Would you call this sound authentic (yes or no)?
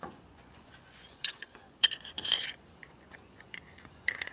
no